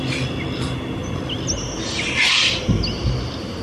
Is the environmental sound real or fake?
real